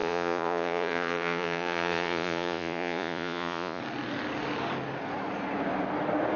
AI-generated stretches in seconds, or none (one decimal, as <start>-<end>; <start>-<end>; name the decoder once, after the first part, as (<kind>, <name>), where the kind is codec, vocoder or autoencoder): 0.0-3.8 (vocoder, Vocos)